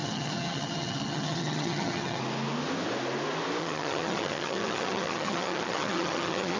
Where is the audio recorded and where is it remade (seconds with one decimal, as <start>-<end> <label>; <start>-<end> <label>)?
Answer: 0.0-2.2 remade; 2.2-3.6 recorded; 3.6-6.6 remade